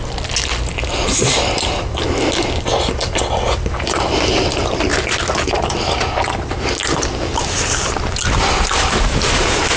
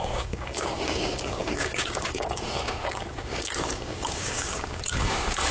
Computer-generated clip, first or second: second